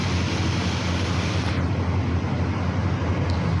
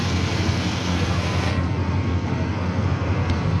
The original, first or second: first